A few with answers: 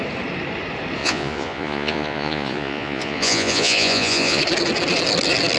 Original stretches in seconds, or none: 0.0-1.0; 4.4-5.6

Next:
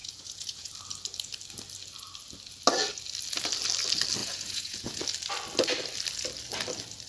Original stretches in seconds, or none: 0.7-4.2; 5.0-7.1

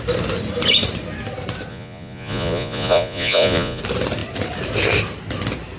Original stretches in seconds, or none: 0.0-1.7; 3.8-5.8

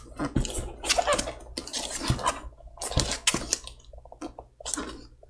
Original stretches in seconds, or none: 0.0-5.3

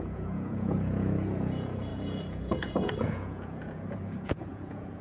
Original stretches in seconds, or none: none

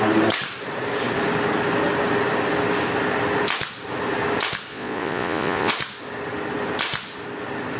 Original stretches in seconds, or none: 0.0-4.7; 5.7-7.8